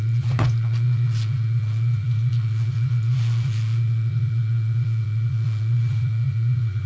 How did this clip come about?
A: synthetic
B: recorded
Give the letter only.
A